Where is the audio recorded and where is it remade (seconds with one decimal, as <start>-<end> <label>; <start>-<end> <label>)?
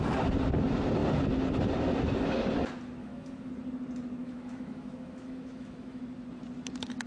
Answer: 0.0-3.0 recorded; 3.0-3.5 remade; 3.5-4.2 recorded; 4.2-6.0 remade; 6.0-7.1 recorded